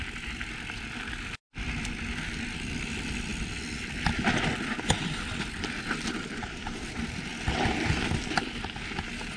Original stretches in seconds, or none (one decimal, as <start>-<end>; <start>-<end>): 0.0-9.4